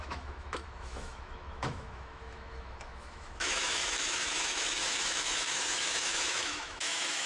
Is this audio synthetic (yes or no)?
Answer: yes